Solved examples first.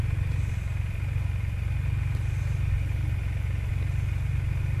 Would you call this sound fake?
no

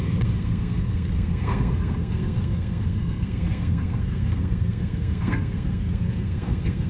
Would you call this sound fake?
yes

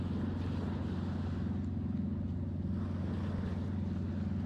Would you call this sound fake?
no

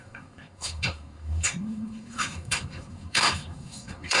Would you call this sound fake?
yes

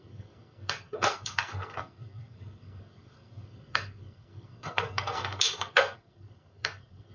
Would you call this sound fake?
yes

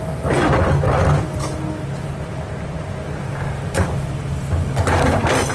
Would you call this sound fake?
no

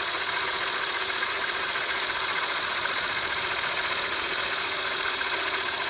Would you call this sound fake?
yes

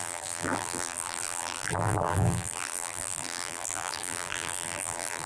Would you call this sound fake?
yes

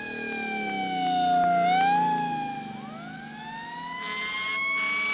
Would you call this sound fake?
no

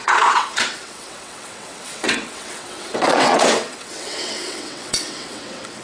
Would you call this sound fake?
yes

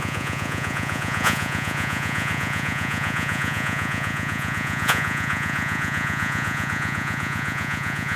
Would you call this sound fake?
yes